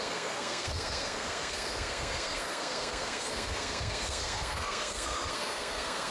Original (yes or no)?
no